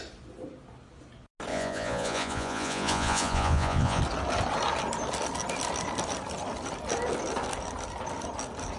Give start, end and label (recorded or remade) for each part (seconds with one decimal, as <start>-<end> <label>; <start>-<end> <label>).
0.0-1.5 recorded; 1.5-4.0 remade; 4.0-8.8 recorded